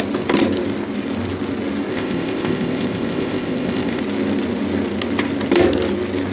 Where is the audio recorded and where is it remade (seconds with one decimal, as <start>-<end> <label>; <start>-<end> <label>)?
0.0-1.9 recorded; 1.9-4.0 remade; 4.0-6.3 recorded